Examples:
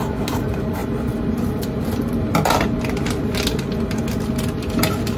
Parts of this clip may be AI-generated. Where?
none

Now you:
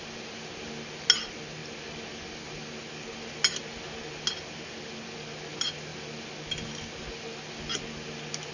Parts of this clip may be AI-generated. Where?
none

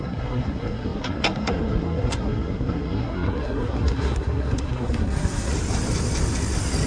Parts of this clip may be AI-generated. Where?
0.0-5.5 (codec, SNAC)

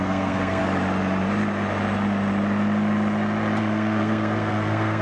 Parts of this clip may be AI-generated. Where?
0.0-0.6 (codec, SNAC); 3.6-5.0

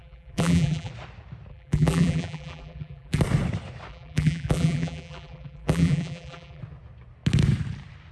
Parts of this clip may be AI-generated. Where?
0.0-0.9 (vocoder, BigVGAN v2); 1.5-3.2; 3.9-6.6

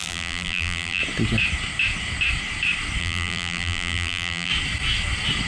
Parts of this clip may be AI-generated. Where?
0.0-1.0 (vocoder, BigVGAN v2); 3.0-4.5